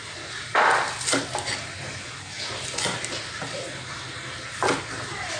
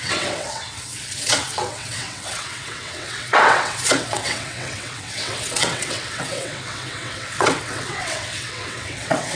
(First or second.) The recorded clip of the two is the first